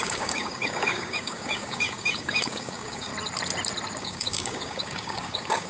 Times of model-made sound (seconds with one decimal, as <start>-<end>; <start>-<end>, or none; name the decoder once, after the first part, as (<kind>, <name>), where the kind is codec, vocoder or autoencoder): 0.0-3.1 (codec, DAC); 4.0-5.7

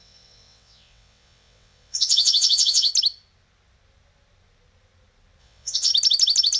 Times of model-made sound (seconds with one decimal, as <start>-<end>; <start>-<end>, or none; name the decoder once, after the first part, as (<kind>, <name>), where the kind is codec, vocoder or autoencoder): 0.0-2.9 (vocoder, WaveNeXt); 5.4-5.9

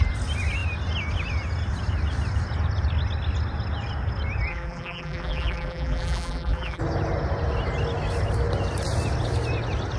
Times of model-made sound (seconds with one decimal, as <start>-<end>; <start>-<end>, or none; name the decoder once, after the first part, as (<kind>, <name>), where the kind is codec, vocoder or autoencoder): 4.5-6.8 (vocoder, BigVGAN v2)